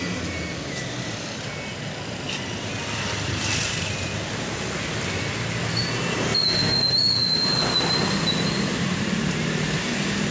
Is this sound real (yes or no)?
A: yes